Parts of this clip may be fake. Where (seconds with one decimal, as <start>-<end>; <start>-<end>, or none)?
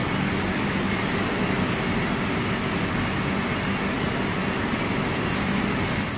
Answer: none